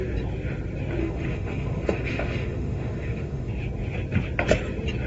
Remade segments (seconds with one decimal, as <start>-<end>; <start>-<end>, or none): 1.0-3.5